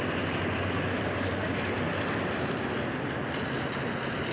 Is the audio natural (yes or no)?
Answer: no